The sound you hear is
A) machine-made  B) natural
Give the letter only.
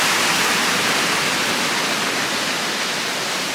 B